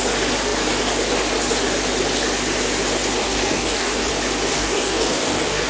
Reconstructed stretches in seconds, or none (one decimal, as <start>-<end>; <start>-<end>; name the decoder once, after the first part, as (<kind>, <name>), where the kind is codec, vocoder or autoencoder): 3.2-4.1 (codec, DAC); 4.5-5.7